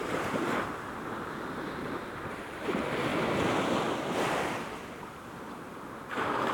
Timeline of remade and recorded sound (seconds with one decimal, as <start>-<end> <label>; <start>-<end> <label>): 0.0-3.1 remade; 3.1-4.6 recorded; 4.6-6.5 remade